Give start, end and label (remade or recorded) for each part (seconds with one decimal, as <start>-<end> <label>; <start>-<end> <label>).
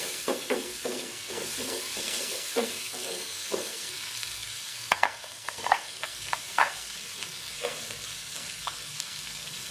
0.0-9.7 remade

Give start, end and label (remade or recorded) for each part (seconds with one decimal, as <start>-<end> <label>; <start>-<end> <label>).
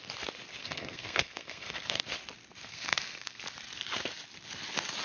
0.0-0.6 recorded; 0.6-2.0 remade; 2.0-2.7 recorded; 2.7-3.4 remade; 3.4-5.0 recorded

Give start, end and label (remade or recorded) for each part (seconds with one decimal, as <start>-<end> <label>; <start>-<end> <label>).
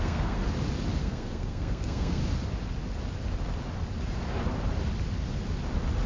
0.0-0.4 remade; 0.4-1.0 recorded; 1.0-2.2 remade; 2.2-6.1 recorded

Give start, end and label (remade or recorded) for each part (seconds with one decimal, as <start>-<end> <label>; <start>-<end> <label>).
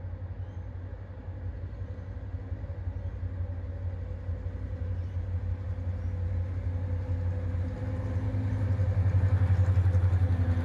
0.0-10.6 recorded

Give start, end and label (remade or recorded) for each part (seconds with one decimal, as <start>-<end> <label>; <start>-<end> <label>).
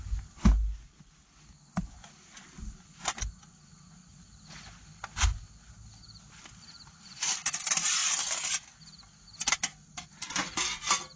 0.0-11.2 recorded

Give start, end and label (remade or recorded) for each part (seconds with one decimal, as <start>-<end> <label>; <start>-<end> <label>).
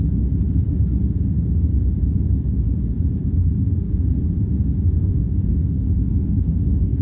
0.0-3.4 recorded; 3.4-4.0 remade; 4.0-5.0 recorded; 5.0-7.0 remade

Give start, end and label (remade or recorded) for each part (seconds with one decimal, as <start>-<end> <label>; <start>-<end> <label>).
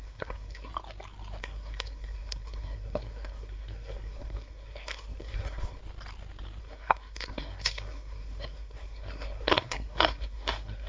0.0-0.7 remade; 0.7-1.4 recorded; 1.4-5.8 remade; 5.8-6.6 recorded; 6.6-10.9 remade